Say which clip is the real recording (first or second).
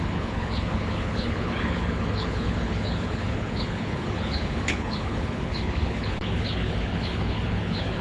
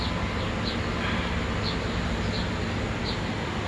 second